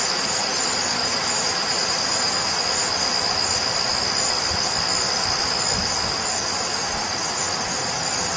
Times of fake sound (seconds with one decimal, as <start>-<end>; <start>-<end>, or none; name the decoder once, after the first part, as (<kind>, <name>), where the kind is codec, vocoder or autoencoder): 1.0-2.6 (vocoder, BigVGAN v2)